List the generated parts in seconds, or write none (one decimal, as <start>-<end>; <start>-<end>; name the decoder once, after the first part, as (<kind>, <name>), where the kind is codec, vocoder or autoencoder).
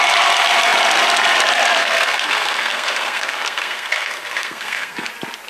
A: 1.8-5.1 (codec, SNAC)